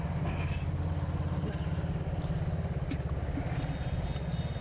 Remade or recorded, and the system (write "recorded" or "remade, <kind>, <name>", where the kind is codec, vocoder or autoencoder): recorded